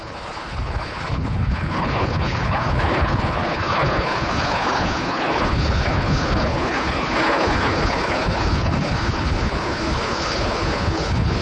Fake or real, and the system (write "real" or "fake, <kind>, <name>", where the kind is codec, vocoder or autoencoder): fake, codec, HILCodec